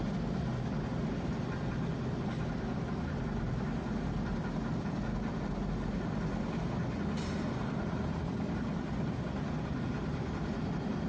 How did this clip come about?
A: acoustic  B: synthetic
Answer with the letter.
A